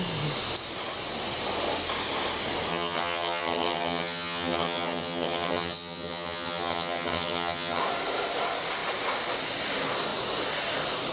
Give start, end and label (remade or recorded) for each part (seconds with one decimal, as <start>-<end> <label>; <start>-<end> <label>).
0.0-2.7 recorded; 2.7-7.8 remade; 7.8-11.1 recorded